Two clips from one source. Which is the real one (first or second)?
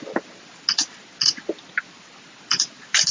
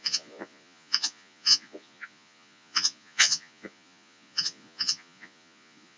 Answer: first